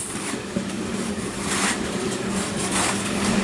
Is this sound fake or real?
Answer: fake